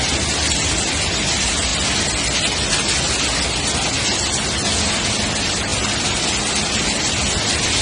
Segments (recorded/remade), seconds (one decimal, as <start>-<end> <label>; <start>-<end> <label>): 0.0-7.8 recorded